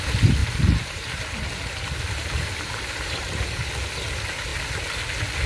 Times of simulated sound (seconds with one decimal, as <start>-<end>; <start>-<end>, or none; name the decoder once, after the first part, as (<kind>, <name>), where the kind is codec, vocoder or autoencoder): 0.4-3.7 (vocoder, BigVGAN v2)